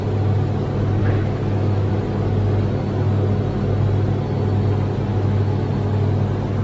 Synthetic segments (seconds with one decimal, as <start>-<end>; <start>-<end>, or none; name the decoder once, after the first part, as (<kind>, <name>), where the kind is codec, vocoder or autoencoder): 1.0-1.9 (autoencoder, DAC-VAE); 5.1-5.7